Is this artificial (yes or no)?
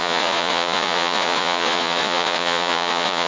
yes